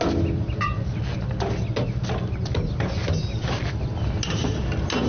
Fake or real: real